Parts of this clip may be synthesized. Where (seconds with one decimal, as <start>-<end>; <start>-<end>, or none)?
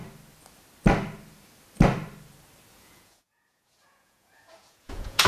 2.7-5.3